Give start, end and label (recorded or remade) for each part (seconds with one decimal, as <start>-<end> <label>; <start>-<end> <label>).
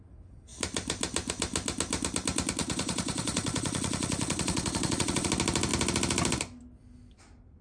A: 0.0-2.6 recorded; 2.6-5.3 remade; 5.3-7.6 recorded